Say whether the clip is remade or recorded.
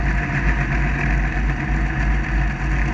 recorded